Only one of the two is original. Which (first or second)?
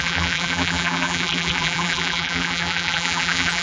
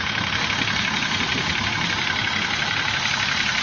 second